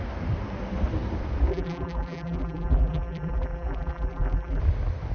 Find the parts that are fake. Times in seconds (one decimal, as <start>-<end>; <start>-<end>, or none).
1.5-4.6